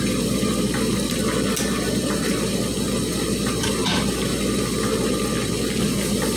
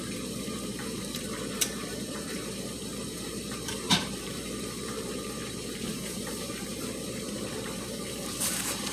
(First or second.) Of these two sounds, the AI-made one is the second